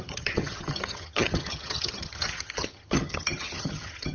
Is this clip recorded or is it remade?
remade